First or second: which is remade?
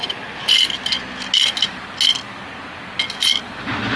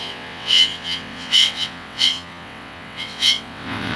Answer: second